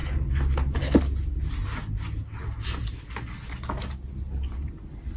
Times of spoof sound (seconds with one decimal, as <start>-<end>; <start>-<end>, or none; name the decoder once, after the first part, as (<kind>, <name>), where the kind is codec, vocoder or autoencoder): none